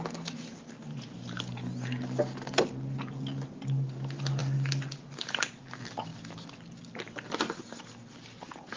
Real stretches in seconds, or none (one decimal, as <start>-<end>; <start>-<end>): 0.0-8.8